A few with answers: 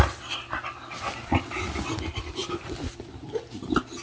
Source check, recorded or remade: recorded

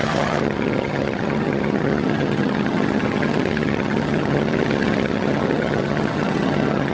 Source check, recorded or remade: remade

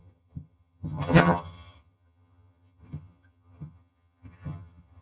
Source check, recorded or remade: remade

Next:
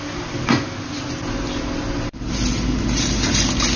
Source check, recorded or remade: recorded